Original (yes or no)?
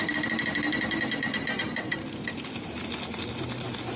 yes